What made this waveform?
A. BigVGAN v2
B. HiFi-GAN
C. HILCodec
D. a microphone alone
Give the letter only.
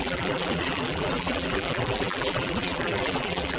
A